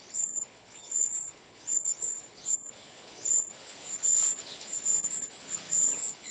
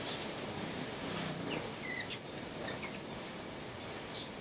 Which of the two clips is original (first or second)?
second